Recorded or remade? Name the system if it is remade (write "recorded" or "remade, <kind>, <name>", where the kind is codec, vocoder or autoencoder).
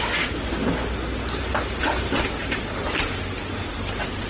recorded